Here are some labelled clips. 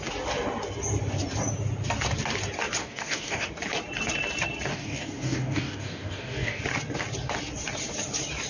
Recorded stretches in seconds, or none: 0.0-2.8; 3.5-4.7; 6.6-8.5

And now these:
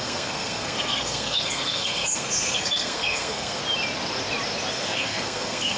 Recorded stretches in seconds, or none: 3.6-4.7

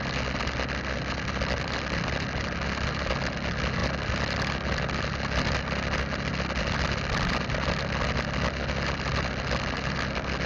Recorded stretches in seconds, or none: 0.0-10.5

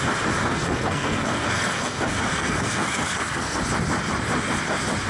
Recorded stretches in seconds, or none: 0.0-0.5; 3.6-5.1

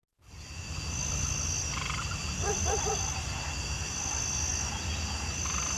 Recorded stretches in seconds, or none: 0.0-5.8